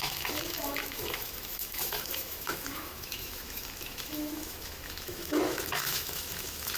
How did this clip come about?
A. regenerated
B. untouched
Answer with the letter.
A